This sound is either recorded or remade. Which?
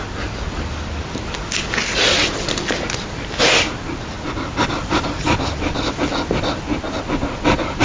recorded